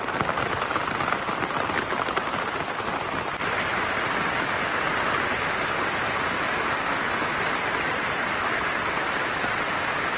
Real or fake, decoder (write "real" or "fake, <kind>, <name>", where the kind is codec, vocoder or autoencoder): real